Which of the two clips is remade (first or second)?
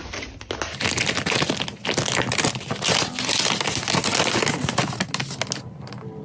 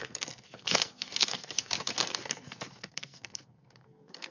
second